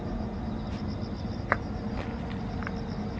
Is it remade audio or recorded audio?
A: recorded